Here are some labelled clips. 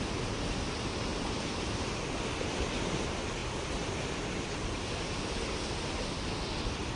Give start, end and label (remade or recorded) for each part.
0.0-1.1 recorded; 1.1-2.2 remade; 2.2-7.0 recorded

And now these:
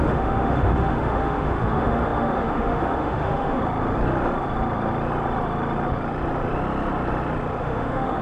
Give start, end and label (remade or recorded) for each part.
0.0-3.6 remade; 3.6-7.6 recorded; 7.6-8.2 remade

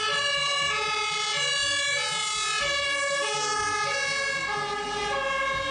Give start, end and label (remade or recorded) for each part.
0.0-5.7 recorded